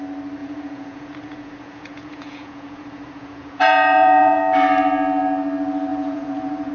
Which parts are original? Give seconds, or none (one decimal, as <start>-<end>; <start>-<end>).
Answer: 0.0-0.4; 4.4-5.9